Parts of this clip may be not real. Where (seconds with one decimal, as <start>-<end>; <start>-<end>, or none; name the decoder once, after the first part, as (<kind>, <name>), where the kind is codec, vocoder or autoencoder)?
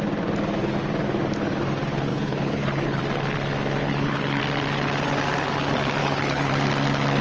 2.1-3.0 (codec, HILCodec); 3.8-4.4; 6.0-6.5